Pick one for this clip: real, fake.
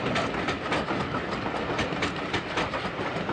real